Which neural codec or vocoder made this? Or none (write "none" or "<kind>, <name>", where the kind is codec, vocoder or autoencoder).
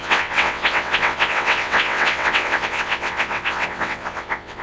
vocoder, WaveNeXt